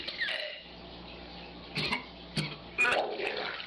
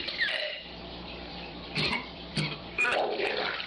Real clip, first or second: first